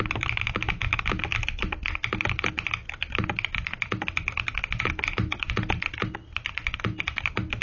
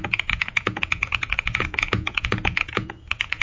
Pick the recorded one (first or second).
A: first